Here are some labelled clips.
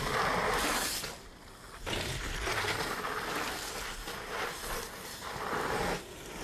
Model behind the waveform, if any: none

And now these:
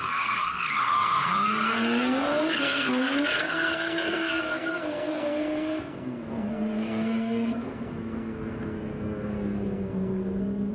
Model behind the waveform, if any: codec, SNAC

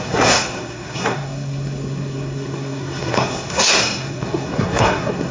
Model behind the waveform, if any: codec, SNAC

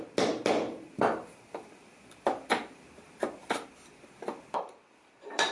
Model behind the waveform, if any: none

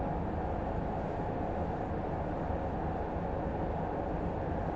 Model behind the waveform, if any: none